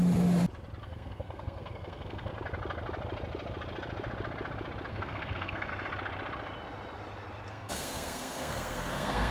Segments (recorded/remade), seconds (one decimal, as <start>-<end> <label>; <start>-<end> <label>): 0.0-0.8 recorded; 0.8-2.3 remade; 2.3-4.9 recorded; 4.9-5.7 remade; 5.7-7.5 recorded; 7.5-9.3 remade